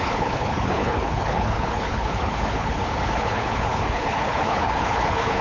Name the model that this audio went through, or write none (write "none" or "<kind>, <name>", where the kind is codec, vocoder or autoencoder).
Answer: codec, HILCodec